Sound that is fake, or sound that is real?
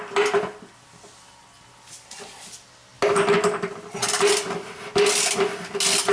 real